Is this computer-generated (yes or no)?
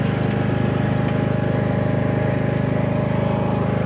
no